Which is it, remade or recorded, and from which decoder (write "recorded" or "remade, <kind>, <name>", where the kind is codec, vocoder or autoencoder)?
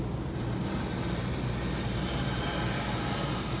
recorded